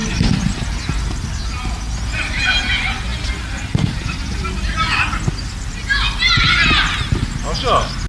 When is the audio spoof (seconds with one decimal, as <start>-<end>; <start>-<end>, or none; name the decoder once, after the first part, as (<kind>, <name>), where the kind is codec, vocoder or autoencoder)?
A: 0.0-0.8 (vocoder, BigVGAN v2)